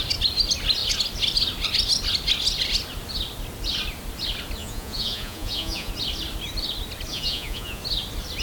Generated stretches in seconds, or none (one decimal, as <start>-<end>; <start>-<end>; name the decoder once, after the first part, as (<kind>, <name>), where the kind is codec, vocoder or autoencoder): 4.6-5.9 (vocoder, Vocos); 7.1-7.8